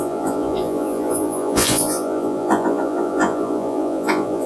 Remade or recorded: remade